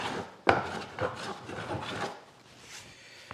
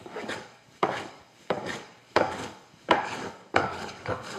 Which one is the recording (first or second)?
first